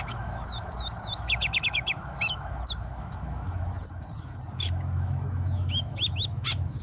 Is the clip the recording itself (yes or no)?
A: no